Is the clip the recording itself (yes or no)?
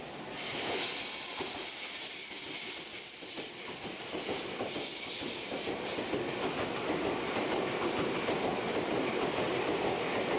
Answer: yes